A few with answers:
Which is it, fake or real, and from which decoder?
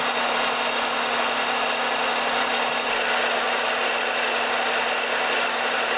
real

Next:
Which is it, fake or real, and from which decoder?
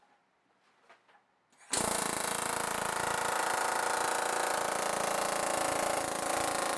real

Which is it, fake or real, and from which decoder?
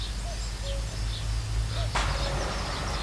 real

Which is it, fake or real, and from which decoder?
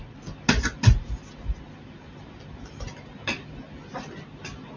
real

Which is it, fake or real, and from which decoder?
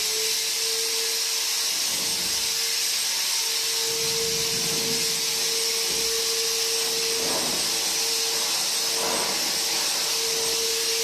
real